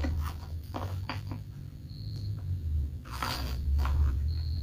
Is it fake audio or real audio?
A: fake